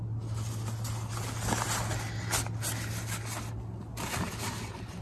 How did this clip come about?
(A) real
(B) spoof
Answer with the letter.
A